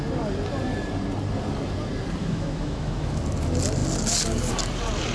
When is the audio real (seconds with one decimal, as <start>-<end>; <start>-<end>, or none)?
0.0-2.2; 3.2-5.1